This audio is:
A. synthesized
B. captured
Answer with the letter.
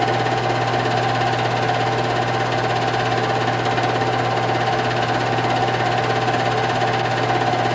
B